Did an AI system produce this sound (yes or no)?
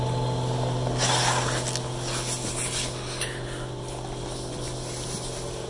no